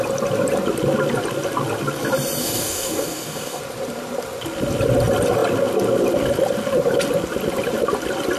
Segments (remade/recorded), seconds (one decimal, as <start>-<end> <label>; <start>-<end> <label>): 0.0-2.4 recorded; 2.4-3.6 remade; 3.6-8.4 recorded